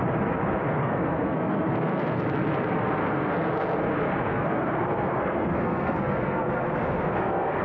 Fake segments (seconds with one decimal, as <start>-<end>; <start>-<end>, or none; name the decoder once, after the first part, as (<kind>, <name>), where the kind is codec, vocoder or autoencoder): 0.7-2.2 (codec, SNAC); 3.0-3.5; 4.3-7.6

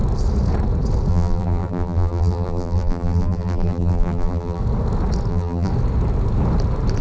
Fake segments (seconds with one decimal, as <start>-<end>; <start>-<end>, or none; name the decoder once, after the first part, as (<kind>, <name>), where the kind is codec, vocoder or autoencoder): 1.1-4.6 (vocoder, BigVGAN v2); 5.3-5.7

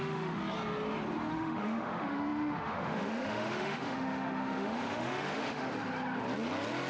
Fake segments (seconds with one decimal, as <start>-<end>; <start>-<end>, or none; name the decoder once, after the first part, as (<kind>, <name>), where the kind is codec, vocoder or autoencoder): 0.0-0.4 (autoencoder, DAC-VAE); 1.3-5.7

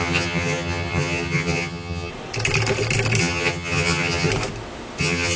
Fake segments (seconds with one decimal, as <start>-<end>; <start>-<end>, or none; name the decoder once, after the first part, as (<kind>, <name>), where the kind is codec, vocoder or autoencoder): 0.0-2.1 (vocoder, HiFi-GAN); 3.2-4.3; 5.0-5.4

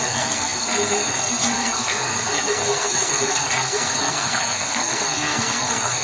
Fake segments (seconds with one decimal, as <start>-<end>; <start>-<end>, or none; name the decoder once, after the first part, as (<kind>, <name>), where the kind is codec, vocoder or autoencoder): 0.0-6.0 (codec, SNAC)